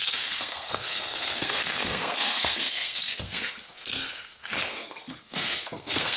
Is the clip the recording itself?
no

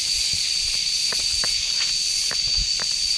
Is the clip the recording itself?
yes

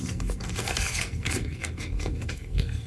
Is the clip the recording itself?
no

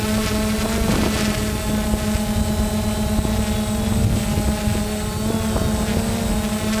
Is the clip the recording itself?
yes